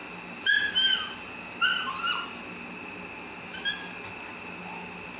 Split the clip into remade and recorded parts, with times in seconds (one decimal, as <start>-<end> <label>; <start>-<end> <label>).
0.0-5.2 recorded